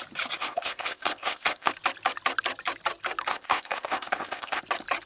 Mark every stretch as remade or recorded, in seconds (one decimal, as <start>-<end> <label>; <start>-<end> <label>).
0.0-0.4 recorded; 0.4-1.7 remade; 1.7-3.3 recorded; 3.3-4.6 remade; 4.6-5.1 recorded